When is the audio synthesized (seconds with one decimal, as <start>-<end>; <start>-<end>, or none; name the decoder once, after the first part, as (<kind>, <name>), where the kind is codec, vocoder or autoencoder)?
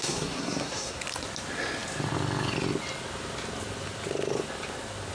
0.0-1.0 (codec, SNAC)